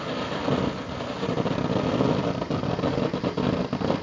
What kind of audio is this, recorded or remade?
recorded